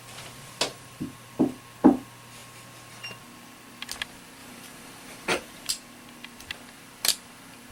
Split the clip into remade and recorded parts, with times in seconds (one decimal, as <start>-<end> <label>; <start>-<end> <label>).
0.0-0.7 recorded; 0.7-1.3 remade; 1.3-4.4 recorded; 4.4-5.7 remade; 5.7-7.7 recorded

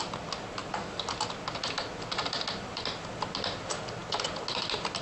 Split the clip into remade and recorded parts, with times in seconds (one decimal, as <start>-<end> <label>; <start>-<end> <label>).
0.0-5.0 recorded

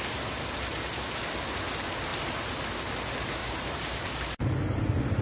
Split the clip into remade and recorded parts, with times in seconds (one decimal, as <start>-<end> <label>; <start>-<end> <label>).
0.0-3.4 recorded; 3.4-4.1 remade; 4.1-5.2 recorded

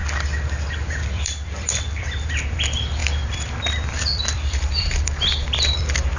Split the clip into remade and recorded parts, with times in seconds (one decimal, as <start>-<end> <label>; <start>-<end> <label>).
0.0-0.7 recorded; 0.7-6.2 remade

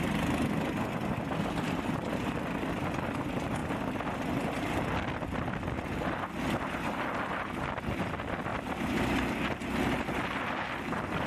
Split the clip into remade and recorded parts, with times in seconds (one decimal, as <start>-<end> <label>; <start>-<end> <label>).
0.0-8.5 recorded; 8.5-9.0 remade; 9.0-11.3 recorded

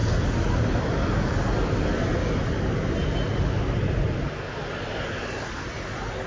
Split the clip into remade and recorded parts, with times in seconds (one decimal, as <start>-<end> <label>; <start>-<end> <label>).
0.0-6.3 recorded